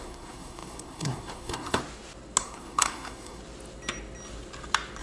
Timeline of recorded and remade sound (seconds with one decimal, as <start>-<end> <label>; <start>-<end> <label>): 0.0-1.8 remade; 1.8-2.4 recorded; 2.4-3.4 remade; 3.4-5.0 recorded